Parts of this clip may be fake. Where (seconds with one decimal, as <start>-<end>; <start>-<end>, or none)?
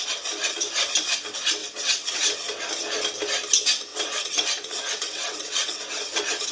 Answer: 1.6-2.2; 3.9-5.8